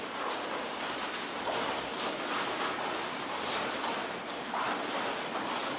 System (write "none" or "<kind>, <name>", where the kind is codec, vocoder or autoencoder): none